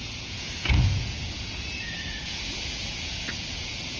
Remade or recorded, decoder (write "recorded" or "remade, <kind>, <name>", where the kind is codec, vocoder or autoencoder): remade, vocoder, Vocos